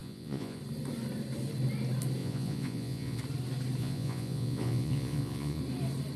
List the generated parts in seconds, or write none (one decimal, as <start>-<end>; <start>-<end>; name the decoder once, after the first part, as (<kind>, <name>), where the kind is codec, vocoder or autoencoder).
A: 0.0-0.6 (vocoder, Vocos); 2.2-3.2; 3.8-5.6